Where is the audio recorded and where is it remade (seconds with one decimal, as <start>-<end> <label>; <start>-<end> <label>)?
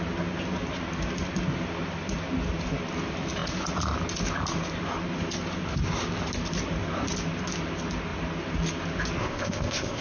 0.0-9.2 recorded; 9.2-10.0 remade